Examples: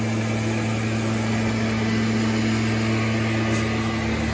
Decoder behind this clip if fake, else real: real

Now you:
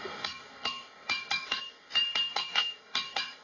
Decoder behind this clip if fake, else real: fake, codec, SNAC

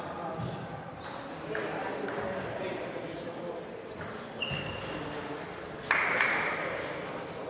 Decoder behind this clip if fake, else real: real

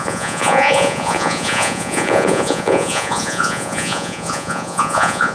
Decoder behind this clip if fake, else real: fake, vocoder, Vocos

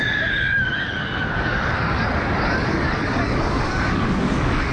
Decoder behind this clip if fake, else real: fake, codec, DAC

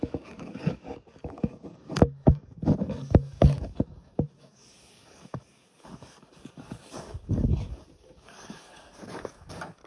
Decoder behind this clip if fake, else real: fake, codec, DAC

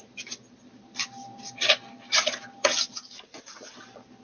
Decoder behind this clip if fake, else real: fake, vocoder, BigVGAN v2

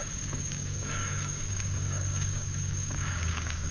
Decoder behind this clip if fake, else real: fake, codec, DAC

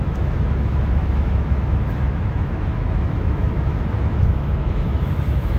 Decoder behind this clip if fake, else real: fake, autoencoder, DAC-VAE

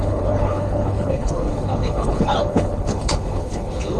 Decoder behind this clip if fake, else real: fake, codec, HILCodec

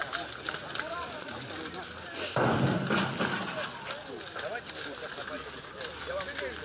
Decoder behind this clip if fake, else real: real